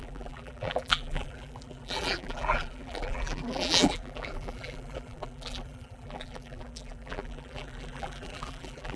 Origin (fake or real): fake